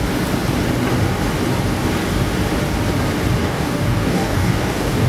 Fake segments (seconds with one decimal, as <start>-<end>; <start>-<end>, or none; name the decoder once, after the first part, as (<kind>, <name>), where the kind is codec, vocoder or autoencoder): 3.4-5.1 (codec, DAC)

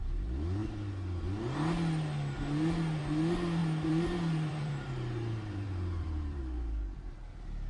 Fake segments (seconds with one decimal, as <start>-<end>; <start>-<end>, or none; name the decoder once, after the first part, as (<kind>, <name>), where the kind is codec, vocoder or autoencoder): 3.6-6.4 (vocoder, BigVGAN v2)

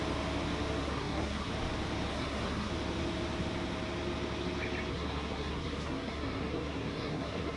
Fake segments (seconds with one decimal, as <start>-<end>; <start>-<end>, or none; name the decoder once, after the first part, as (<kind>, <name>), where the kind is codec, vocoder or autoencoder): 0.8-1.5 (codec, SNAC); 2.1-2.7; 4.9-7.6